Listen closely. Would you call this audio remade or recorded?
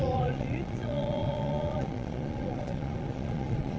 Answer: remade